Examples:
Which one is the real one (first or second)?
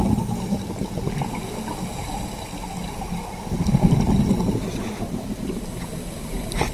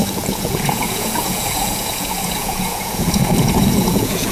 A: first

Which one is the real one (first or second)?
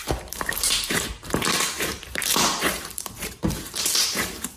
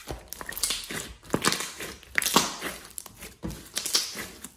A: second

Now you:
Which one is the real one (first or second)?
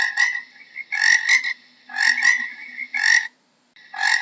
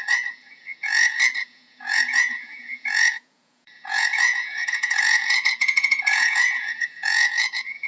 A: first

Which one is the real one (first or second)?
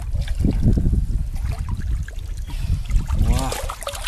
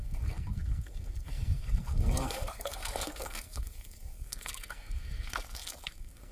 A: first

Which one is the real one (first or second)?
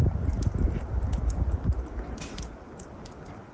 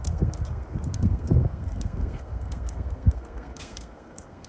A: first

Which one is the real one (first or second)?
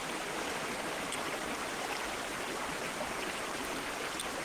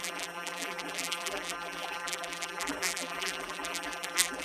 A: first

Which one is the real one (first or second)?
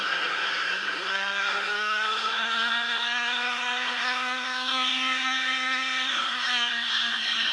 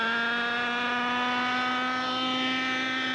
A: second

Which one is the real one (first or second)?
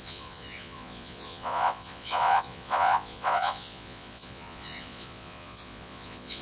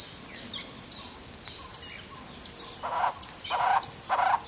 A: second